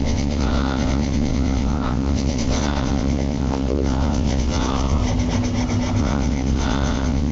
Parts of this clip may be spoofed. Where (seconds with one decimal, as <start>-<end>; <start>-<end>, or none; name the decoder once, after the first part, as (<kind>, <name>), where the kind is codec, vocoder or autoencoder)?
0.0-5.0 (vocoder, WaveNeXt); 6.0-7.3